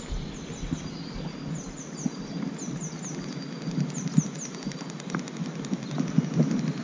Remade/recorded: recorded